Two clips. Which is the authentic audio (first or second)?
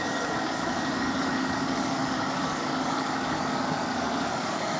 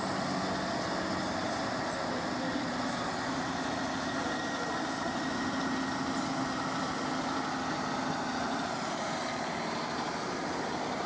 second